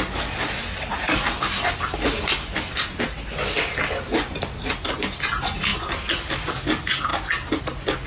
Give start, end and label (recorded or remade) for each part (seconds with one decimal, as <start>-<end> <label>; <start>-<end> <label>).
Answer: 0.0-8.1 recorded

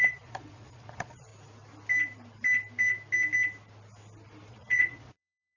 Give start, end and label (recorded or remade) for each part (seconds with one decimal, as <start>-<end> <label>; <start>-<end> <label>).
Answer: 0.0-1.3 remade; 1.3-4.5 recorded; 4.5-5.6 remade

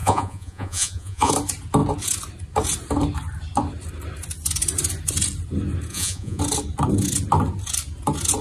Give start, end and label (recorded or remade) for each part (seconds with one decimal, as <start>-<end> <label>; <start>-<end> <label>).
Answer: 0.0-1.3 remade; 1.3-5.9 recorded; 5.9-6.4 remade; 6.4-8.4 recorded

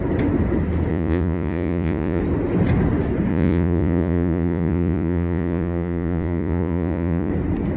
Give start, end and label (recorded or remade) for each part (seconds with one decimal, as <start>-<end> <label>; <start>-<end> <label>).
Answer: 0.0-0.9 recorded; 0.9-2.2 remade; 2.2-3.3 recorded; 3.3-7.3 remade; 7.3-7.8 recorded

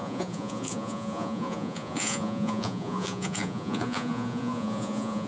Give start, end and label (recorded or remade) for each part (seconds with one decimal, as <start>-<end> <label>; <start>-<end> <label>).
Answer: 0.0-5.3 remade